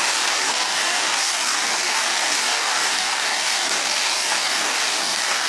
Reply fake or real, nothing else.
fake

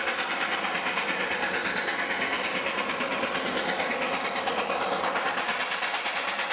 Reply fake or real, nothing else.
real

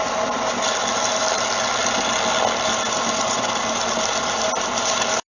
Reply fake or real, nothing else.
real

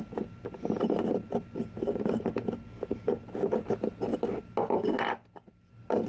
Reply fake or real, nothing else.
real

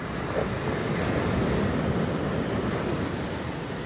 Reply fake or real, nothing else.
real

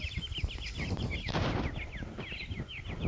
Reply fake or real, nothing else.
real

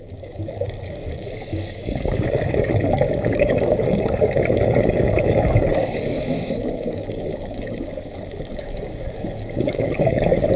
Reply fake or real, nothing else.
fake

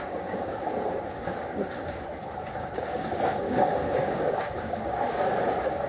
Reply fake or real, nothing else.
fake